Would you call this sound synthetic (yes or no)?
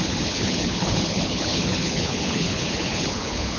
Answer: yes